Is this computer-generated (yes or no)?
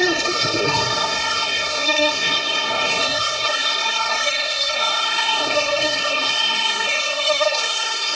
yes